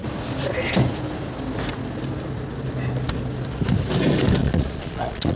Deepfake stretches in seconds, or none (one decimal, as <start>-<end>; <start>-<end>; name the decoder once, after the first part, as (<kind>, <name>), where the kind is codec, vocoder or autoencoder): 4.4-5.4 (vocoder, Vocos)